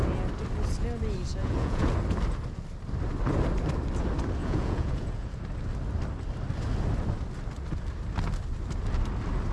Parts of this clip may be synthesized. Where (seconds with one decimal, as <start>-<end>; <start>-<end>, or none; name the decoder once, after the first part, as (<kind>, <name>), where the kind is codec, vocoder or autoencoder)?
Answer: 1.3-1.9 (vocoder, Vocos); 4.4-5.4